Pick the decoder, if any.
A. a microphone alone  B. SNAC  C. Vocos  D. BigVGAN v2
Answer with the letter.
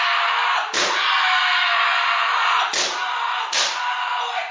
A